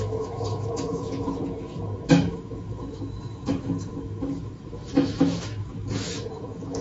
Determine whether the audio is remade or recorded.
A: remade